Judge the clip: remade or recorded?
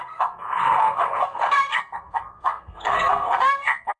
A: remade